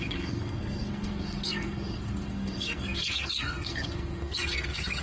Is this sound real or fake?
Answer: fake